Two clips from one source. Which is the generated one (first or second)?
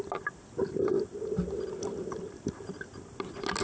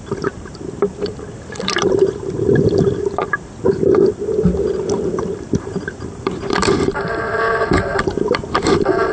second